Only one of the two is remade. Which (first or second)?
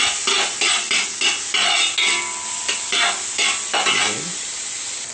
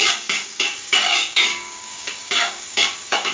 second